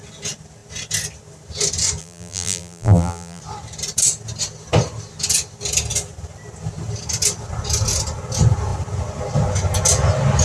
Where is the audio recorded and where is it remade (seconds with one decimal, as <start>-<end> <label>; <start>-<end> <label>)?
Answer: 0.0-2.0 recorded; 2.0-3.4 remade; 3.4-10.4 recorded